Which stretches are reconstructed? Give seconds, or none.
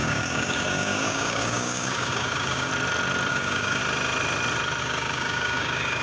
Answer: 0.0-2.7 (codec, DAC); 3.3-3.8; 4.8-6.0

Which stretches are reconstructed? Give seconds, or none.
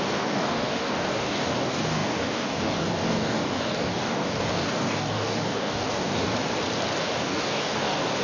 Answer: 0.0-6.3 (codec, DAC); 7.0-8.2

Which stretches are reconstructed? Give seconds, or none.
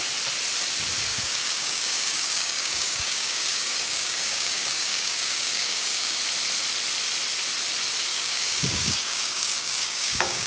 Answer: 1.1-6.2 (codec, DAC); 8.1-10.5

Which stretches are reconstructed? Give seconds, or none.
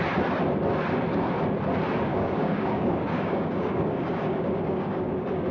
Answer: 2.1-5.5 (codec, DAC)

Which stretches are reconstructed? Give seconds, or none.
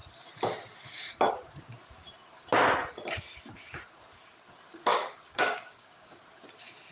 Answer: 4.9-6.2 (codec, DAC)